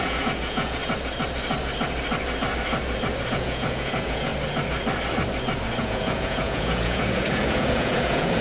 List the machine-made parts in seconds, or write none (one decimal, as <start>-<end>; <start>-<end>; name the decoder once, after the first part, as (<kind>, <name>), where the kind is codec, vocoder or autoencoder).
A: 0.0-0.8 (vocoder, Vocos); 3.3-4.3; 5.8-8.4